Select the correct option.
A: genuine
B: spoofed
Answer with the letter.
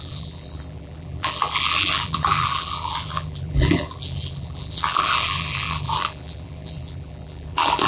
B